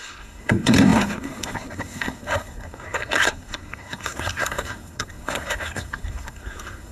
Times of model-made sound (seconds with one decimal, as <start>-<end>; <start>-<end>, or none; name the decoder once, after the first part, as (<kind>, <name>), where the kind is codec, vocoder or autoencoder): 0.0-6.9 (codec, SNAC)